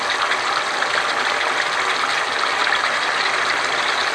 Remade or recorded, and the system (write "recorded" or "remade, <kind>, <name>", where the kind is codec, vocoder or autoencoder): recorded